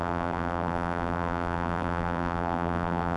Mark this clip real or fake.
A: fake